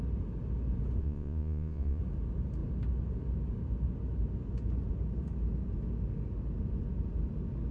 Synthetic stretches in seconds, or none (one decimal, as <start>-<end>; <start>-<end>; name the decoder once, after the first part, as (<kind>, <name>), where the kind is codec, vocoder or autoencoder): 1.0-2.0 (vocoder, Vocos)